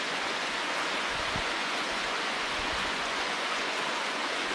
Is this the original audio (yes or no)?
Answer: no